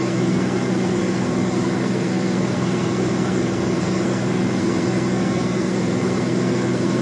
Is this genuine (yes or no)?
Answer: no